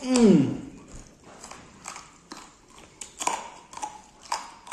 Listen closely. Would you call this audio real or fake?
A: real